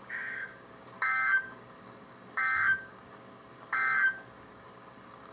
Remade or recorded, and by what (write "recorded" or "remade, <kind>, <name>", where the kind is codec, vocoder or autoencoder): remade, codec, DAC